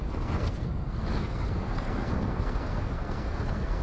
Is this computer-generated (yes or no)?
yes